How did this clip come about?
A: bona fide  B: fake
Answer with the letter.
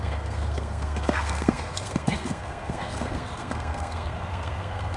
B